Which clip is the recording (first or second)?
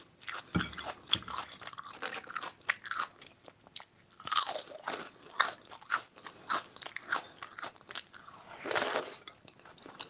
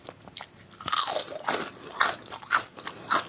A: second